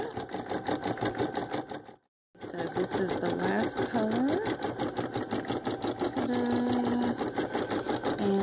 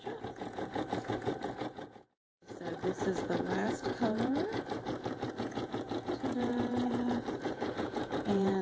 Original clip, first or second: first